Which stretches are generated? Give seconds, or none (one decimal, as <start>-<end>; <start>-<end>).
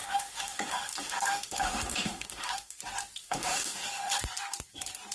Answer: 0.0-2.8; 3.2-4.2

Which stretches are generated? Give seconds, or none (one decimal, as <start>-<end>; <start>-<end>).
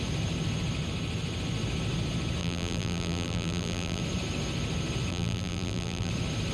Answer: 2.4-4.0; 5.1-6.1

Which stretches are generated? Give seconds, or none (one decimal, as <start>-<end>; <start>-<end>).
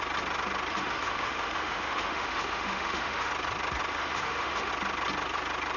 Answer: 0.7-3.3; 3.9-4.7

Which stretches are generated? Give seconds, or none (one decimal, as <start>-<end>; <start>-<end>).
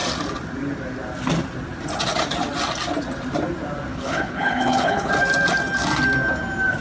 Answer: 3.9-5.1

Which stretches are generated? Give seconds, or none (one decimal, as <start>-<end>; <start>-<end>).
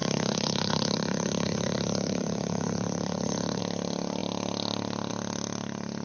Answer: 0.0-3.6